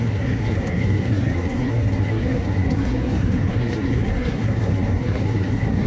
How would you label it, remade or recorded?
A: remade